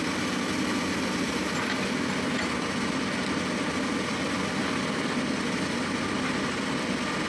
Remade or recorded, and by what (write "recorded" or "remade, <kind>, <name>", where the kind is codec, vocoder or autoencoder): recorded